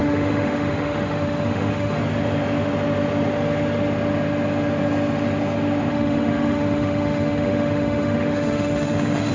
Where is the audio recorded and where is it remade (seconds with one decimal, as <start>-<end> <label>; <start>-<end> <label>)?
0.0-2.0 remade; 2.0-5.9 recorded; 5.9-9.3 remade